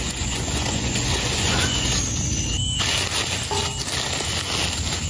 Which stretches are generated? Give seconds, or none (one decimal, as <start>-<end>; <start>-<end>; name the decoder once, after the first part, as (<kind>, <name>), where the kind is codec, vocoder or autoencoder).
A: 0.0-1.9 (vocoder, Vocos)